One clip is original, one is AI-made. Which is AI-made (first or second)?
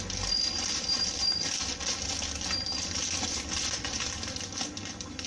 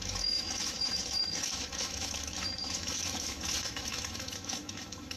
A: second